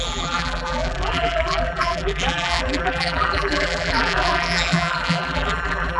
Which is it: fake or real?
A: fake